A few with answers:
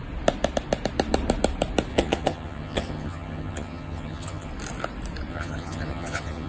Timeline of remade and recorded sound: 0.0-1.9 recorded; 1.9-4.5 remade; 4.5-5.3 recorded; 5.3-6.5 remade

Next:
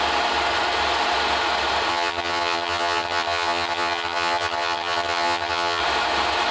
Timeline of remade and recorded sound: 0.0-1.9 recorded; 1.9-5.8 remade; 5.8-6.5 recorded

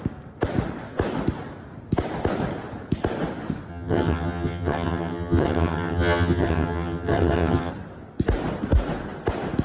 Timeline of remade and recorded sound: 0.0-3.7 recorded; 3.7-7.7 remade; 7.7-9.6 recorded

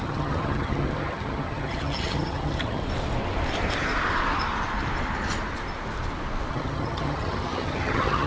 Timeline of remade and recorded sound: 0.0-2.8 remade; 2.8-6.5 recorded; 6.5-8.3 remade

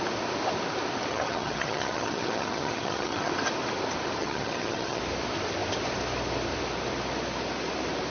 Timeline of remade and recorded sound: 0.0-1.1 recorded; 1.1-3.3 remade; 3.3-4.2 recorded; 4.2-5.0 remade; 5.0-8.1 recorded

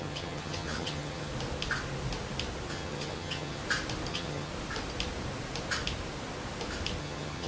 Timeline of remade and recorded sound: 0.0-1.3 remade; 1.3-2.7 recorded; 2.7-3.6 remade; 3.6-4.1 recorded; 4.1-4.5 remade; 4.5-7.0 recorded; 7.0-7.5 remade